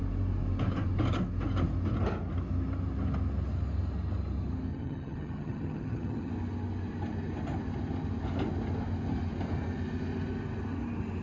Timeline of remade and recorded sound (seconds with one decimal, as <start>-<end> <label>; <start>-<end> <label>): 0.0-4.7 recorded; 4.7-6.3 remade; 6.3-11.2 recorded